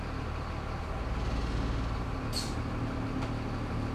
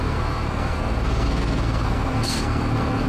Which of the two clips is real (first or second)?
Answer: first